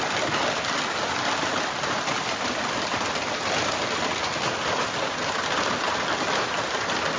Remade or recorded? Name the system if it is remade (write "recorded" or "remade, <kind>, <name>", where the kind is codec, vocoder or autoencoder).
recorded